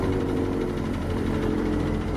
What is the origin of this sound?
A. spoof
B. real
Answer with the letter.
A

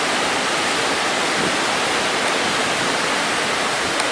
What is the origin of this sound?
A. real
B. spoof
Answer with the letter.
A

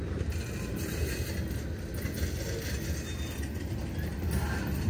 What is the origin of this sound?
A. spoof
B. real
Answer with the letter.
B